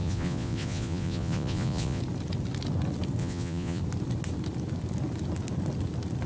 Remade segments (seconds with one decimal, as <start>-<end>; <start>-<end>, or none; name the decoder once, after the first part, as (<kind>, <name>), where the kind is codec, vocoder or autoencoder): 0.0-2.0 (vocoder, Vocos); 3.2-3.8

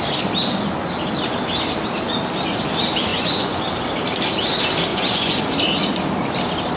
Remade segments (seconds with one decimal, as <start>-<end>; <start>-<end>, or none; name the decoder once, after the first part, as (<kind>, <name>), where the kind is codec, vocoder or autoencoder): 3.1-3.6 (vocoder, Vocos); 4.9-5.4

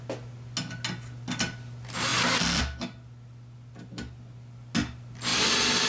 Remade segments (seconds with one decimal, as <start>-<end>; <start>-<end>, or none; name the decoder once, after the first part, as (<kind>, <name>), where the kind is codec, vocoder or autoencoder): none

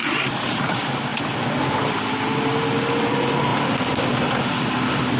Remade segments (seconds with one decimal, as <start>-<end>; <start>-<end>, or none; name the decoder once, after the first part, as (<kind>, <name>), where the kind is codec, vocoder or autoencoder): none

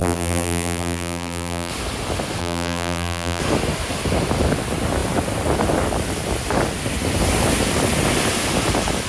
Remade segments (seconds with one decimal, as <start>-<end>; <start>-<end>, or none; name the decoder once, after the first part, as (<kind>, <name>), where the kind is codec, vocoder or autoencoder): 0.0-1.7 (vocoder, BigVGAN v2); 2.4-3.4

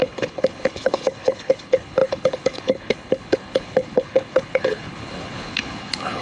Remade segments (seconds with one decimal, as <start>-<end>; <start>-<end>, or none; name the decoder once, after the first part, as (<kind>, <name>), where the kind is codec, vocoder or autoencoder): 0.0-6.2 (codec, HILCodec)